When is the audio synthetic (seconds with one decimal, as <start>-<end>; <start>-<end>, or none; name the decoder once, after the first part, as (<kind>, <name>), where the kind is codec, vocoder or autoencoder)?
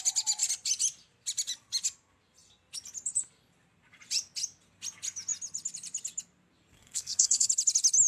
6.8-7.5 (codec, SNAC)